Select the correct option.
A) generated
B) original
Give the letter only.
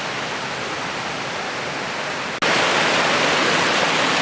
B